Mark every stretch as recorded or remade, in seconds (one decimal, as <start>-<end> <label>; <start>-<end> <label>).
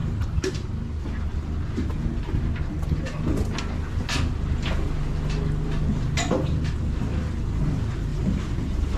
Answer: 0.0-0.7 remade; 0.7-8.1 recorded; 8.1-9.0 remade